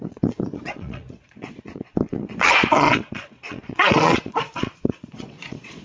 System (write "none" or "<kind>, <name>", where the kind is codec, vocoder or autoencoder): vocoder, Vocos